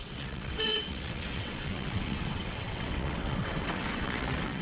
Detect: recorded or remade remade